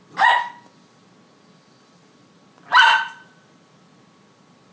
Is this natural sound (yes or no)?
yes